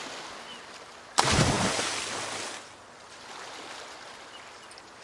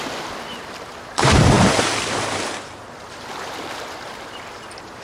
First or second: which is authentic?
first